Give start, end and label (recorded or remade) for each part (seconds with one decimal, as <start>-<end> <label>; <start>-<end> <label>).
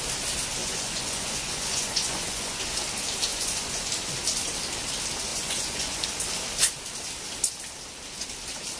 0.0-0.6 recorded; 0.6-2.6 remade; 2.6-3.3 recorded; 3.3-3.9 remade; 3.9-5.3 recorded; 5.3-6.0 remade; 6.0-8.8 recorded